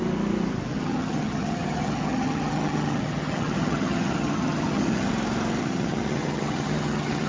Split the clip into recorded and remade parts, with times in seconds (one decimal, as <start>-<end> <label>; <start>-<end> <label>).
0.0-0.7 recorded; 0.7-5.1 remade; 5.1-5.6 recorded; 5.6-7.3 remade